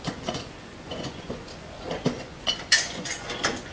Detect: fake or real fake